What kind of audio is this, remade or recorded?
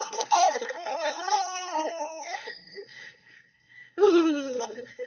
remade